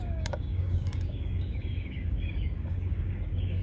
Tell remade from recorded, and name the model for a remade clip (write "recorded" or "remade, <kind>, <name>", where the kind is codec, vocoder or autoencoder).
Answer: remade, codec, DAC